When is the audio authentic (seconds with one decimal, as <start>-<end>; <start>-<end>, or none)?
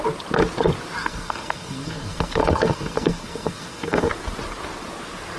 0.0-1.0; 4.1-5.4